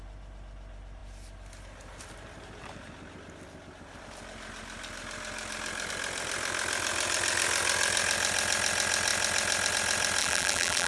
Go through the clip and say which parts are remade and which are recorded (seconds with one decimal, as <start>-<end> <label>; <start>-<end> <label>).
0.0-10.2 recorded; 10.2-10.9 remade